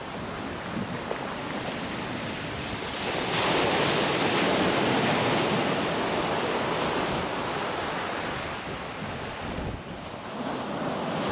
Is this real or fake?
real